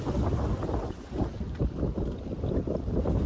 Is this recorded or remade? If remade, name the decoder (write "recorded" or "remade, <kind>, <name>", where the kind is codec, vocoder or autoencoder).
remade, vocoder, BigVGAN v2